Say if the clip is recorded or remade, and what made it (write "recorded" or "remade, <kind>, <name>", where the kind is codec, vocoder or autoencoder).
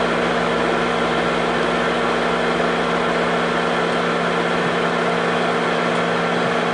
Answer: recorded